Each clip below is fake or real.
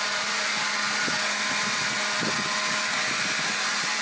real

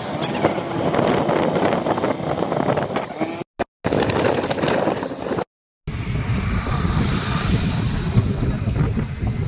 real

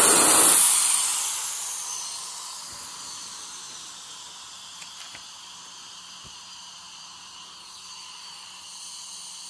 real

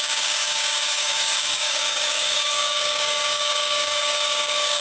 fake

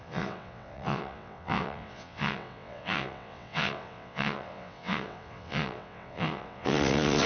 fake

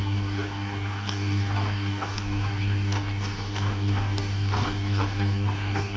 fake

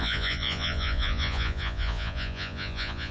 fake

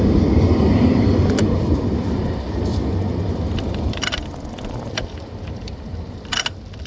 fake